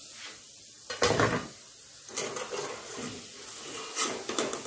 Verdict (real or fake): real